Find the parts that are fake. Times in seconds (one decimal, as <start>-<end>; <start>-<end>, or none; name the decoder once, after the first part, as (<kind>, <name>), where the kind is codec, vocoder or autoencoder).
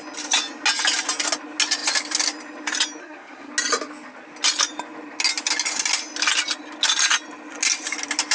3.0-3.5 (codec, SNAC)